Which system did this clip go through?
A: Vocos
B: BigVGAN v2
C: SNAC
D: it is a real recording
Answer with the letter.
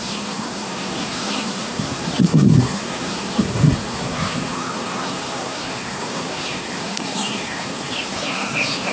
C